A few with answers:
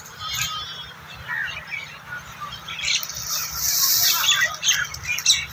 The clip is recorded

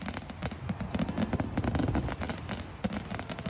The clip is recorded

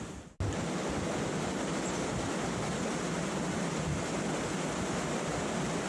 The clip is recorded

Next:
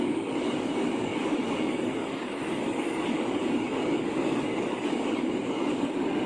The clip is remade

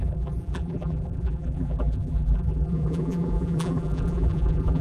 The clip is remade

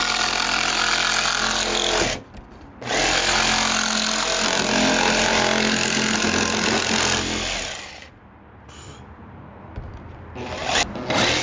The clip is recorded